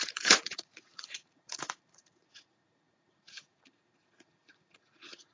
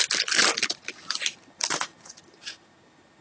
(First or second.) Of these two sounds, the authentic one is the second